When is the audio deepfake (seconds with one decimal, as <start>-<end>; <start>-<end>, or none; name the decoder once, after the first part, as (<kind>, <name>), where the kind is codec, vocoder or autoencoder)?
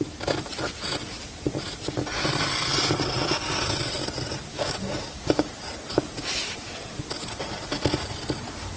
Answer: 4.5-5.5 (codec, DAC)